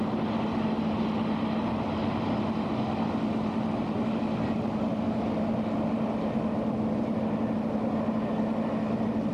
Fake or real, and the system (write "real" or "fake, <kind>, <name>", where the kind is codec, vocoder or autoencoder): real